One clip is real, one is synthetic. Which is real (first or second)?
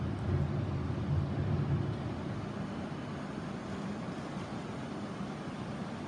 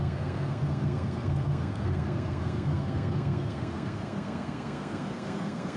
first